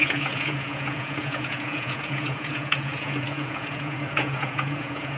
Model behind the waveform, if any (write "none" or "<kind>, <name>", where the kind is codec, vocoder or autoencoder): vocoder, Vocos